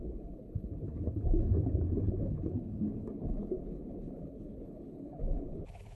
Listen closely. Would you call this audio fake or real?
fake